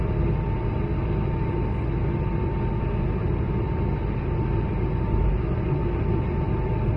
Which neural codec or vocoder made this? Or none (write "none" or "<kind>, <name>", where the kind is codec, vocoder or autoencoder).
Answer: none